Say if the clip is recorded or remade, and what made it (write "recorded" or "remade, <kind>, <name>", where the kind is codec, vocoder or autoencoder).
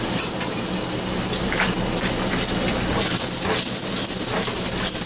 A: recorded